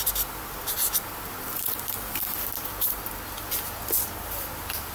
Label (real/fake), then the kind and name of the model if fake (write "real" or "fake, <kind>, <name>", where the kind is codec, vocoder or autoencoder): fake, vocoder, BigVGAN v2